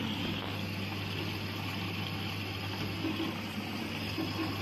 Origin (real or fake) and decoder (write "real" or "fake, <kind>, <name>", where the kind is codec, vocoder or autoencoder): real